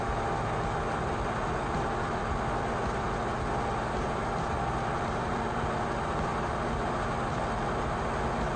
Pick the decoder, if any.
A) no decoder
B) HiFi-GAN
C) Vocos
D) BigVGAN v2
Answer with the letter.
A